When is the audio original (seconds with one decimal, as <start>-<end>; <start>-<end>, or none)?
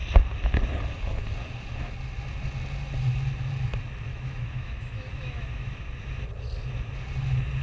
0.0-4.1; 5.8-7.6